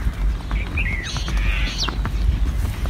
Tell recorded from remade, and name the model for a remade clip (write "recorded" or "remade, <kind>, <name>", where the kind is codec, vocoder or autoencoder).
recorded